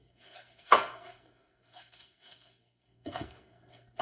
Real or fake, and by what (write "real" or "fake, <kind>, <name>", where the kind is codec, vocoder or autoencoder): fake, codec, SNAC